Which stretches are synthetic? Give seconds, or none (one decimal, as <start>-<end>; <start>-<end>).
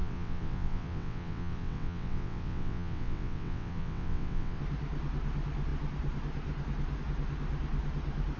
0.0-4.6